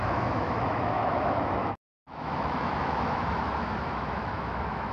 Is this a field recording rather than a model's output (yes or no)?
no